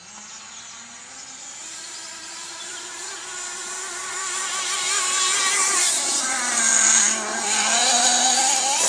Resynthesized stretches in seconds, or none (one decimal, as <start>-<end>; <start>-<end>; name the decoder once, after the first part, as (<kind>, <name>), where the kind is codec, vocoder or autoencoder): 1.6-6.7 (vocoder, BigVGAN v2); 7.8-8.5